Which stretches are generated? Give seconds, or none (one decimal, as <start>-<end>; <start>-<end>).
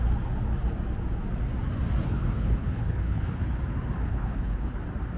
2.0-3.6; 4.1-4.8